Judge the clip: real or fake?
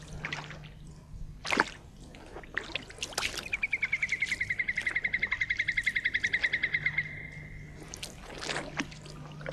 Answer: real